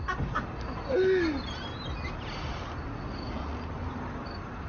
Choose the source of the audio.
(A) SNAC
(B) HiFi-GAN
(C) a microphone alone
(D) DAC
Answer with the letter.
C